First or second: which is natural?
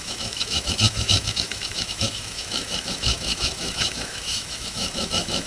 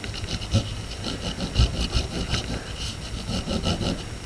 second